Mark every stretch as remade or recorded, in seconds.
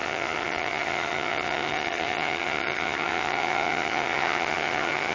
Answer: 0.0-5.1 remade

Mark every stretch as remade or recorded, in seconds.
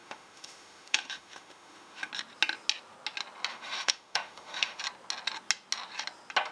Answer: 0.0-2.1 remade; 2.1-3.5 recorded; 3.5-4.8 remade; 4.8-6.5 recorded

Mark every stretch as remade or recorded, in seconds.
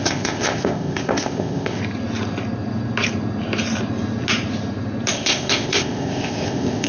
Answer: 0.0-1.8 remade; 1.8-5.1 recorded; 5.1-6.9 remade